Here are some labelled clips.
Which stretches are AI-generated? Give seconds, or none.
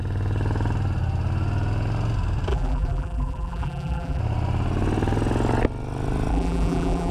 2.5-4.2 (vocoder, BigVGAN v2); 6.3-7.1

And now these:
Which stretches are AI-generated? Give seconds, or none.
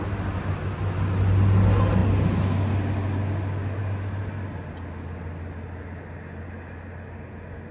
none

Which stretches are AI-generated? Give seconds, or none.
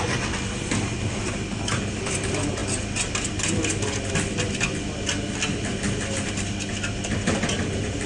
none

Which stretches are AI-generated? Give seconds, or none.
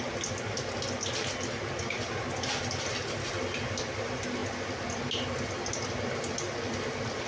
none